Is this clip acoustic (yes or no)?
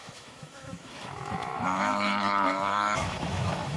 no